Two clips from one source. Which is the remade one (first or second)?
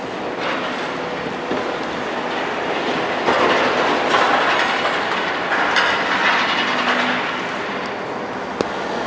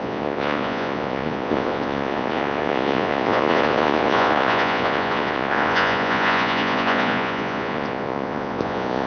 second